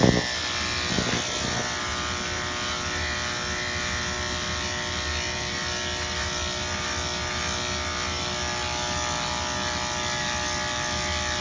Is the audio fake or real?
real